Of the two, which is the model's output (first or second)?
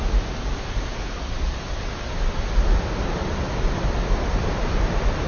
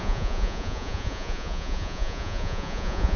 second